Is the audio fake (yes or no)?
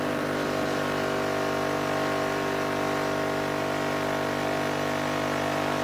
no